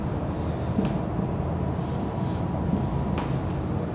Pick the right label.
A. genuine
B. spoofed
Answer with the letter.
A